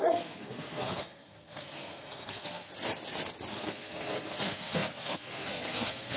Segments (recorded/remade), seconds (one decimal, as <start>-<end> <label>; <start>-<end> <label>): 0.0-2.7 remade; 2.7-3.5 recorded; 3.5-6.2 remade

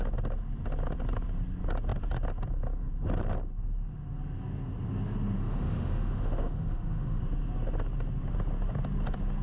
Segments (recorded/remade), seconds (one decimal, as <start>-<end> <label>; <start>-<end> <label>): 0.0-5.4 recorded; 5.4-7.2 remade; 7.2-9.4 recorded

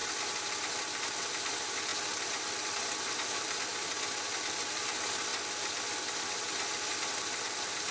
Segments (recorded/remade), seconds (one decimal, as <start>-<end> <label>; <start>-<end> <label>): 0.0-5.3 remade; 5.3-6.2 recorded; 6.2-7.9 remade

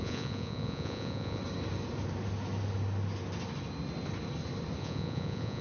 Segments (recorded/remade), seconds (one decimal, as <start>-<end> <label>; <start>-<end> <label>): 0.0-1.4 remade; 1.4-4.8 recorded; 4.8-5.6 remade

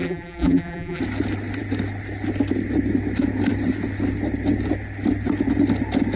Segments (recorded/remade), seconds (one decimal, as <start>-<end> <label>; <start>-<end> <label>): 0.0-1.0 remade; 1.0-6.2 recorded

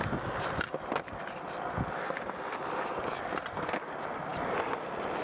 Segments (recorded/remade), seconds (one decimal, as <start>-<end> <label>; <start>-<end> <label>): 0.0-5.2 recorded

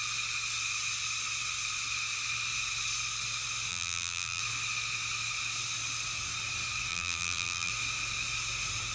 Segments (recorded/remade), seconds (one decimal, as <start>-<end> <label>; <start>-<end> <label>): 0.0-3.7 recorded; 3.7-4.4 remade; 4.4-6.9 recorded; 6.9-7.7 remade; 7.7-8.9 recorded

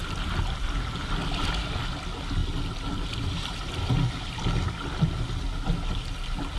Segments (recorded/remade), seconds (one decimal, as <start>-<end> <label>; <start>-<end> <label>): 0.0-6.6 recorded